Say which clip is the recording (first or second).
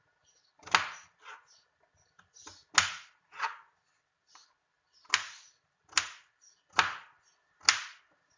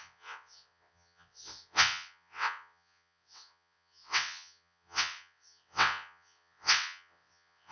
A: first